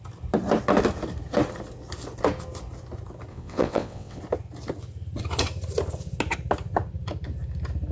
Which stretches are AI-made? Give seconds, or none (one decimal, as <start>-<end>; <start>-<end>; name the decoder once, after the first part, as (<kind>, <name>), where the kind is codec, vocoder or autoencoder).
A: 3.3-4.2 (vocoder, WaveNeXt)